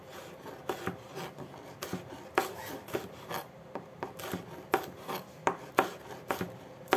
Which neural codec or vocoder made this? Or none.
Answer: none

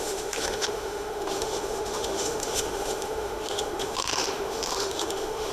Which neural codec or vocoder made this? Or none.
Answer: autoencoder, DAC-VAE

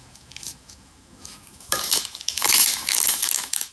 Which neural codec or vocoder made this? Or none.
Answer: autoencoder, DAC-VAE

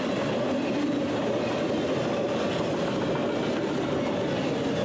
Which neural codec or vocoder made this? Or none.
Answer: none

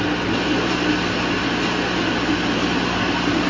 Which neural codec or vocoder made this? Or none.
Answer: none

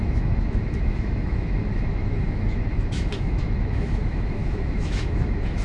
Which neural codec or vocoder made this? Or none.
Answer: autoencoder, DAC-VAE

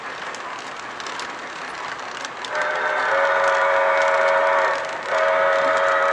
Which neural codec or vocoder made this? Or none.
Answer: none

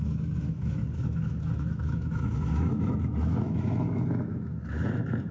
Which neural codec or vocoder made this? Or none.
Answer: autoencoder, DAC-VAE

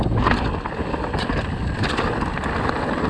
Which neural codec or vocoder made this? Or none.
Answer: none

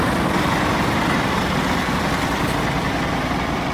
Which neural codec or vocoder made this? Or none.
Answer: none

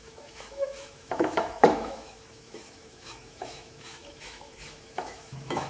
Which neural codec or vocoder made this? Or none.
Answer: autoencoder, DAC-VAE